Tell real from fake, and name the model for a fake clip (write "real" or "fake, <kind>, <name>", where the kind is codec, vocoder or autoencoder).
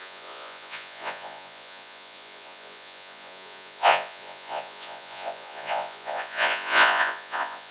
fake, vocoder, Vocos